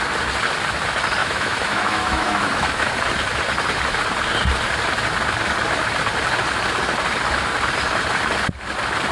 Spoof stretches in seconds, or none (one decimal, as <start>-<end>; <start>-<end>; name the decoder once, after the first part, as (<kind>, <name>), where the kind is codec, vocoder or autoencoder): 1.2-3.0 (autoencoder, DAC-VAE)